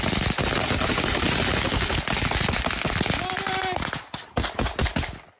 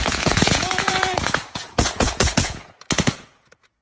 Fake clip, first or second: second